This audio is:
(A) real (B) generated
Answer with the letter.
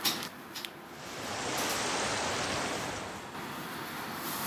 A